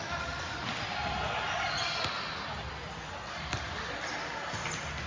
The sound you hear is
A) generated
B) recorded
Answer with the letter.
B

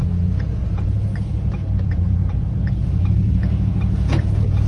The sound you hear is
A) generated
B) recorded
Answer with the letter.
A